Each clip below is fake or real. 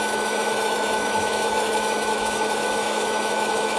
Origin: fake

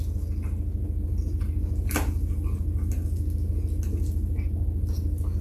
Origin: real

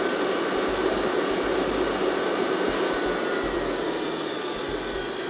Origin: real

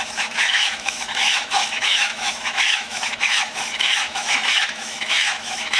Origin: fake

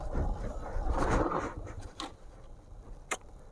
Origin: real